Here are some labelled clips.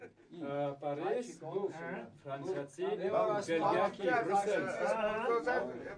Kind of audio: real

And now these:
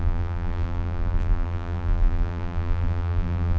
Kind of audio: fake